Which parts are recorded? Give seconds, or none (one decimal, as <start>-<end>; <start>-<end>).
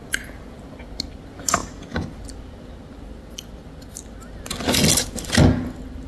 0.0-6.1